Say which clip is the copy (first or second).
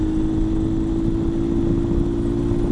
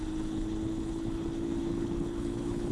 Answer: second